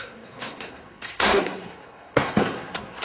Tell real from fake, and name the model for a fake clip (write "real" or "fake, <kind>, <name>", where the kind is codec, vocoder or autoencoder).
fake, codec, SNAC